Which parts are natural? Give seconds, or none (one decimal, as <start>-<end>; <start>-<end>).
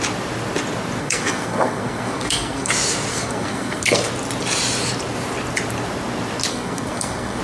0.0-1.0; 2.7-3.1; 4.1-6.5